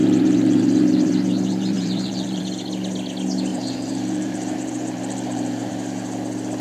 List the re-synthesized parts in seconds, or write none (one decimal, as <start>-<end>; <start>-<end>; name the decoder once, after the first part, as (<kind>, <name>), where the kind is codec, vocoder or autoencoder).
0.0-2.4 (vocoder, BigVGAN v2); 3.5-5.7